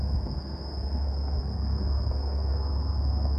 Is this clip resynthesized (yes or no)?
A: yes